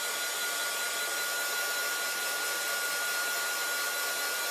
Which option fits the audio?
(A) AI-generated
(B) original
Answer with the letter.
B